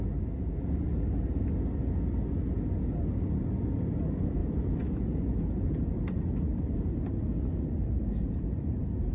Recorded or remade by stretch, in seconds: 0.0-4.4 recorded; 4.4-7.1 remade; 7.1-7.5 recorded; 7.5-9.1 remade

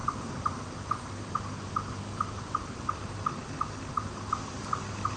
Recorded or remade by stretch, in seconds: 0.0-0.5 remade; 0.5-2.1 recorded; 2.1-2.8 remade; 2.8-5.2 recorded

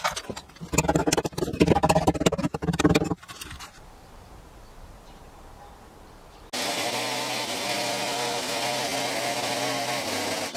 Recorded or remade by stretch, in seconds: 0.0-1.8 recorded; 1.8-5.5 remade; 5.5-10.6 recorded

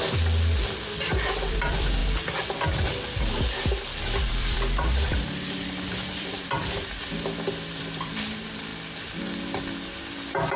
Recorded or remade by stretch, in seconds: 0.0-1.5 recorded; 1.5-2.0 remade; 2.0-4.3 recorded; 4.3-8.7 remade; 8.7-10.1 recorded; 10.1-10.6 remade

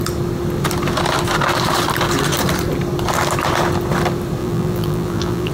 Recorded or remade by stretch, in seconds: 0.0-4.4 recorded; 4.4-5.5 remade

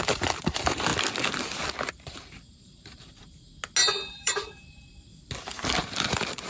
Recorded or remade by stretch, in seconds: 0.0-0.9 remade; 0.9-1.9 recorded; 1.9-3.5 remade; 3.5-4.1 recorded; 4.1-5.1 remade; 5.1-5.8 recorded; 5.8-6.5 remade

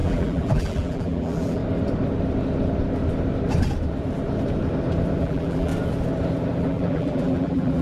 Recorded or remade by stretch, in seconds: 0.0-1.6 remade; 1.6-5.2 recorded; 5.2-5.7 remade; 5.7-6.6 recorded; 6.6-7.8 remade

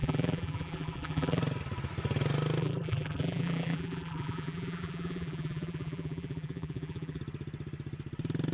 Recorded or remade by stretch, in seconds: 0.0-1.4 remade; 1.4-2.6 recorded; 2.6-7.2 remade; 7.2-8.5 recorded